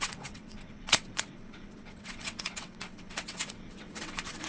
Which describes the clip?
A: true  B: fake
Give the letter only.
B